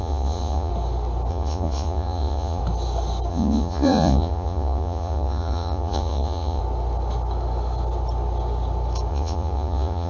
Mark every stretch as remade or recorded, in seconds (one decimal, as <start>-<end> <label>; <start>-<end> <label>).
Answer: 0.0-0.7 remade; 0.7-1.3 recorded; 1.3-2.6 remade; 2.6-3.3 recorded; 3.3-6.6 remade; 6.6-9.1 recorded; 9.1-10.1 remade